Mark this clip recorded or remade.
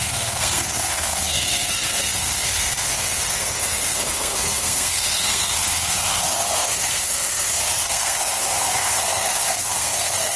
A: remade